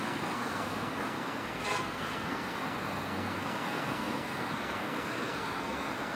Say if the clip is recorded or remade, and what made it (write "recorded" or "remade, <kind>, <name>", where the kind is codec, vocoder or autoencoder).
remade, codec, SNAC